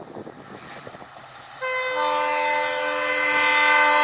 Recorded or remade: recorded